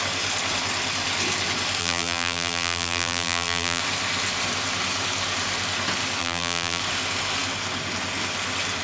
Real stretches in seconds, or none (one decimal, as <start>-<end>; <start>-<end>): 0.0-1.8; 3.8-6.2; 6.8-8.8